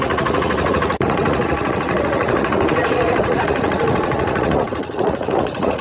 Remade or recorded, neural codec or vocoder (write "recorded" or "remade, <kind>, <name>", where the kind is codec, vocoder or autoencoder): remade, vocoder, Vocos